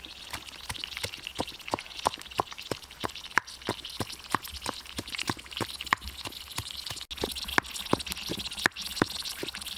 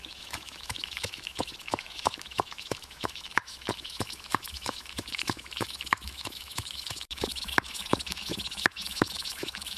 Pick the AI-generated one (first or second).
second